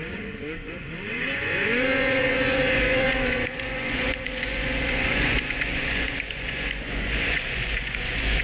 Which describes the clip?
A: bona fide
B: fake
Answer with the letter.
B